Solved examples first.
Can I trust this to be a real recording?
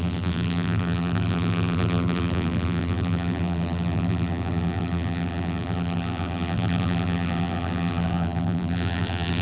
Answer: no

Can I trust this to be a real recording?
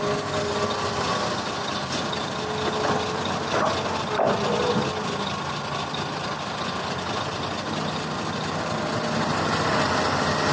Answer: yes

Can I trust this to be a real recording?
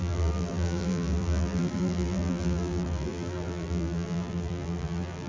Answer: no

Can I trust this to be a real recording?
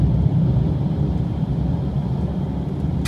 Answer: yes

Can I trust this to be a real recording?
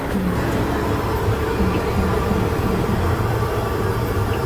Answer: yes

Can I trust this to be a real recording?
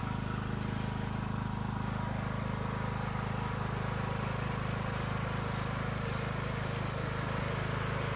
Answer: yes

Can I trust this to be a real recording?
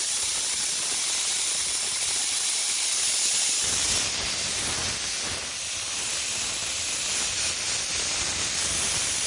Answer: yes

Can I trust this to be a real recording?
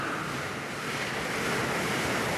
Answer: yes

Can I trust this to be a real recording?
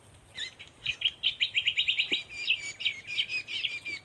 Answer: yes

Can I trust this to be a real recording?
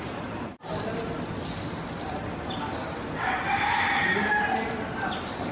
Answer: no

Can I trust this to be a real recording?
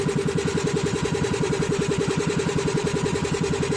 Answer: no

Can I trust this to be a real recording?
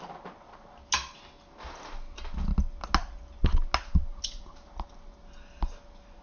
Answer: yes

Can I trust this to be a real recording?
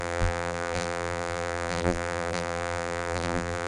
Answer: no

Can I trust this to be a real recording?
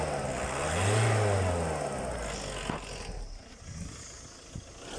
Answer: yes